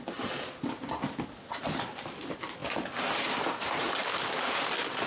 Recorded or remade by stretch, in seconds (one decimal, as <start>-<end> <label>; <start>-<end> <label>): 0.0-5.1 recorded